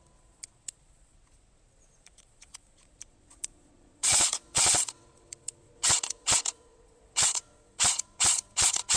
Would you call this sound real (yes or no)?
no